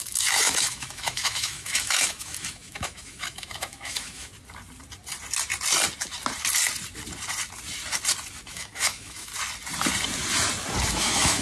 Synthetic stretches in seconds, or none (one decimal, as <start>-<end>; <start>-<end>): 0.0-4.3; 8.5-9.3; 10.9-11.4